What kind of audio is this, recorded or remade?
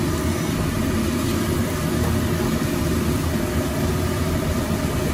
recorded